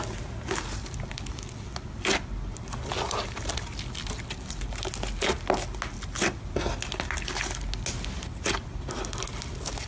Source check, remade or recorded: recorded